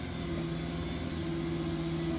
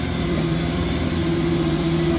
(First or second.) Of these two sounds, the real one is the first